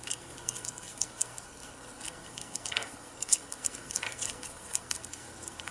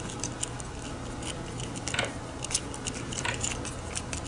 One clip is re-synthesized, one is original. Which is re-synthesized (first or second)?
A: first